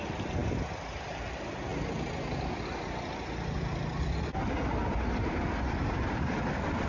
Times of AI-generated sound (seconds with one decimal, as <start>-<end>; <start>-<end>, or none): 0.0-0.4; 1.1-1.7; 5.1-6.9